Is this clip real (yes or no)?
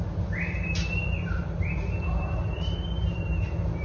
no